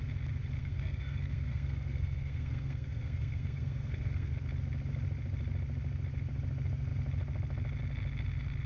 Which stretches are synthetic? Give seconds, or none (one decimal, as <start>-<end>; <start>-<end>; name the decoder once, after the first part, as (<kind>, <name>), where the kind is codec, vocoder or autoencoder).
0.6-4.3 (codec, SNAC)